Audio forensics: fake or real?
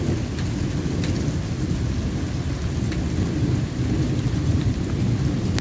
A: real